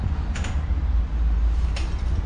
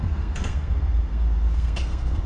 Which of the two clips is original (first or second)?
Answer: first